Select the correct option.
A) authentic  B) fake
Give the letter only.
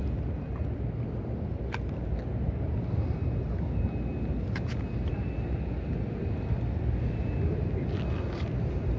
A